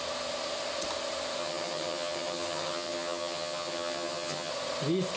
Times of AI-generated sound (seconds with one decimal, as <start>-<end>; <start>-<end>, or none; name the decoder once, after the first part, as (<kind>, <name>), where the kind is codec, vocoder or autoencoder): 1.4-4.5 (vocoder, HiFi-GAN)